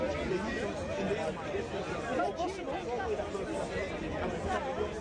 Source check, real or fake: real